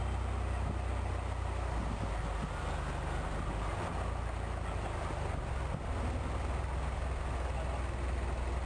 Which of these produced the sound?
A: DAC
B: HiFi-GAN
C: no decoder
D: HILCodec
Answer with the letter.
C